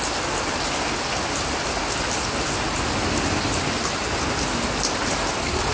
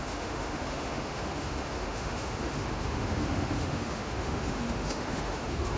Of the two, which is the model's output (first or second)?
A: second